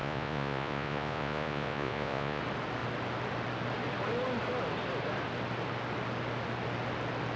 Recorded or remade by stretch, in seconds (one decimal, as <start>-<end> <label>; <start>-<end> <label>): 0.0-2.4 remade; 2.4-7.4 recorded